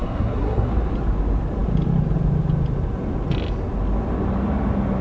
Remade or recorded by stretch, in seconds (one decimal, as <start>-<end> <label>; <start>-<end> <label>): 0.0-0.7 remade; 0.7-5.0 recorded